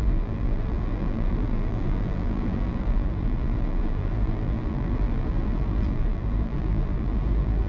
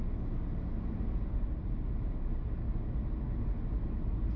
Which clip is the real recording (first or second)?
second